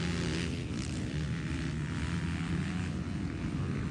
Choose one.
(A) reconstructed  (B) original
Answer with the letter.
B